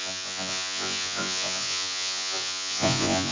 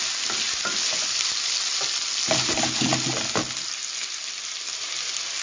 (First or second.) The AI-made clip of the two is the first